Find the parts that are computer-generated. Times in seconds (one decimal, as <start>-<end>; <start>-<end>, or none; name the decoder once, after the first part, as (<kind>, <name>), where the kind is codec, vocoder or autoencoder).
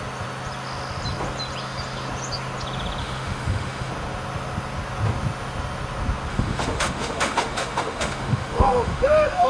3.0-3.9 (autoencoder, DAC-VAE); 6.3-9.5